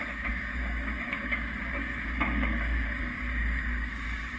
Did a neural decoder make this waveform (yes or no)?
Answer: yes